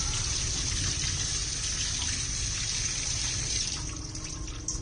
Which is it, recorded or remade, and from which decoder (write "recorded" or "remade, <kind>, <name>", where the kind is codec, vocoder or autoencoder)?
recorded